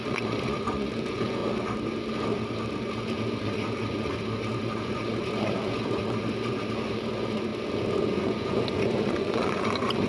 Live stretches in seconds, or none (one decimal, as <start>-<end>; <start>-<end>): 1.4-2.9; 7.5-8.2